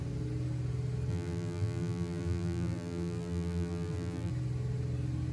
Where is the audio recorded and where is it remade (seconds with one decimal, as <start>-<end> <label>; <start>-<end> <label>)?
0.0-1.1 recorded; 1.1-4.3 remade; 4.3-5.3 recorded